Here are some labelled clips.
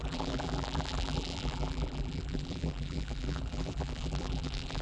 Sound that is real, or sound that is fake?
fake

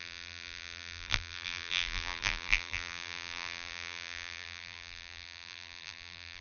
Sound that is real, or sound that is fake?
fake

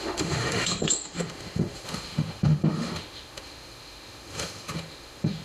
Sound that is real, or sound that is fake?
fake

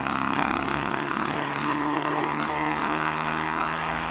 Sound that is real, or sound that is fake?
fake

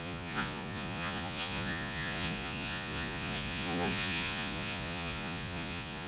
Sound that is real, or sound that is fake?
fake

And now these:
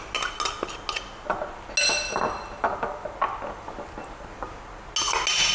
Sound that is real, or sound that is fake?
real